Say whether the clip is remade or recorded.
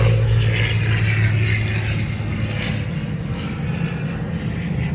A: recorded